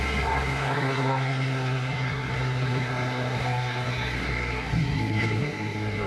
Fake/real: fake